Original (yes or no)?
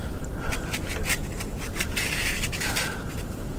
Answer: no